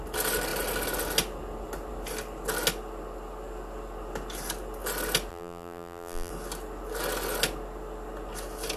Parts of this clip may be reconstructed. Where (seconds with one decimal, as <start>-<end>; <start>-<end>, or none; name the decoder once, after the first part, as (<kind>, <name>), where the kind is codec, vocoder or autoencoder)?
5.3-6.3 (vocoder, BigVGAN v2)